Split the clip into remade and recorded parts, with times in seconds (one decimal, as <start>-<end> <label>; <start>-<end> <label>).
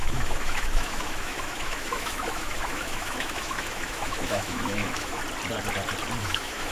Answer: 0.0-5.2 remade; 5.2-6.2 recorded; 6.2-6.7 remade